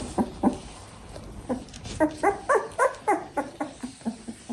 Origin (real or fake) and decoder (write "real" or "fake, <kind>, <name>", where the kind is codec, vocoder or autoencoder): fake, vocoder, BigVGAN v2